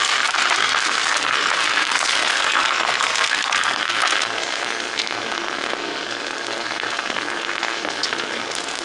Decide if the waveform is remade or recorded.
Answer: remade